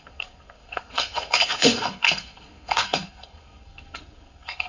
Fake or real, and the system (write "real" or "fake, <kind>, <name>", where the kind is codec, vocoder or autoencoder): fake, codec, SNAC